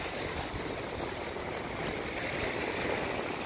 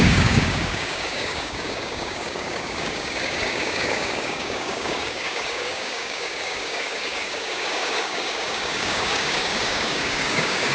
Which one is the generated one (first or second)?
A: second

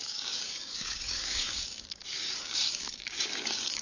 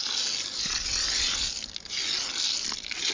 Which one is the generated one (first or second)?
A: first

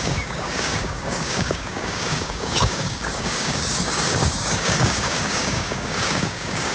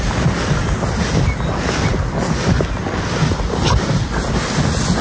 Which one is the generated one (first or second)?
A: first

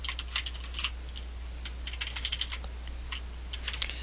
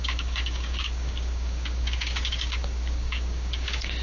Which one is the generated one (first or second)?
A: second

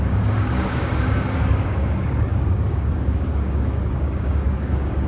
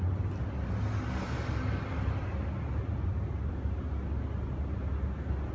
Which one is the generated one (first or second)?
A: first